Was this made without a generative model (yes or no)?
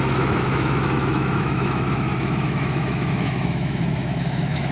no